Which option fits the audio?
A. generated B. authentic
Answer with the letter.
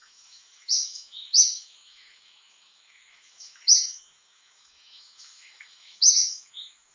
A